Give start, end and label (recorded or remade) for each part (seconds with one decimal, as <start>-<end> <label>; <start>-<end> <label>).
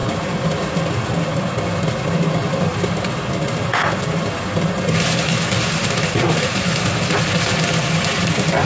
0.0-8.6 recorded